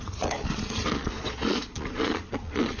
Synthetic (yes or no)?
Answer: yes